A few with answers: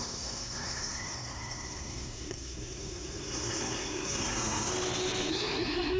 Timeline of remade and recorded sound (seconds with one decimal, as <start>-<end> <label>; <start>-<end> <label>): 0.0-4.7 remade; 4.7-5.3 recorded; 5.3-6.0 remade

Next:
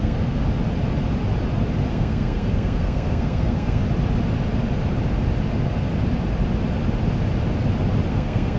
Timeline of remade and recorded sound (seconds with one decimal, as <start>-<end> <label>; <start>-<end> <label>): 0.0-0.4 remade; 0.4-1.9 recorded; 1.9-3.8 remade; 3.8-8.1 recorded; 8.1-8.6 remade

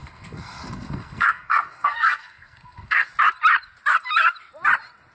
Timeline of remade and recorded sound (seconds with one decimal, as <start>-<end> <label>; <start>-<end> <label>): 0.0-3.1 remade; 3.1-5.1 recorded

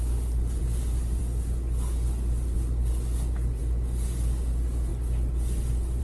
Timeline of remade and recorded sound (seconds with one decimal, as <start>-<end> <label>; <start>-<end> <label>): 0.0-6.0 recorded